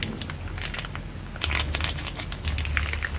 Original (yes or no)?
yes